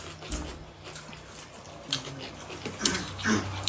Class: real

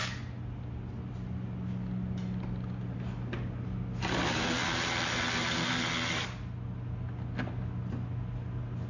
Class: real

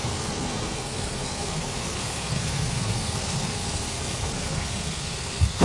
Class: fake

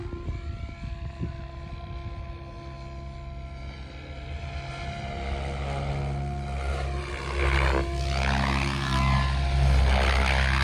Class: real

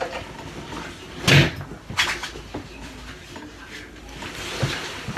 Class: real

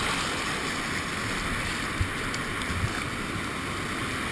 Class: real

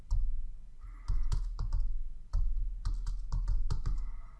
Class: real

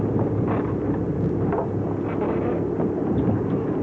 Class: real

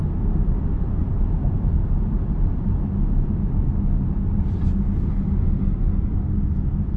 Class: real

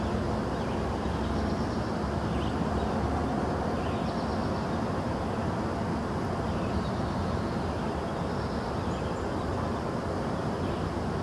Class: real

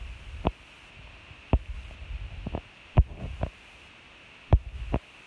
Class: real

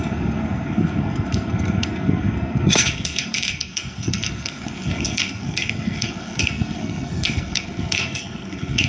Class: fake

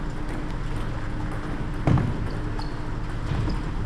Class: real